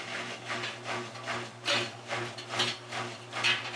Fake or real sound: real